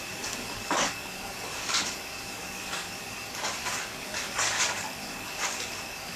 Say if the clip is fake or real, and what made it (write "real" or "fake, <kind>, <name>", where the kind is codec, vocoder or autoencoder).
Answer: fake, codec, DAC